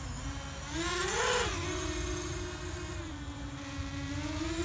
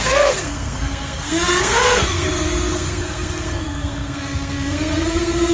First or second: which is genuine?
first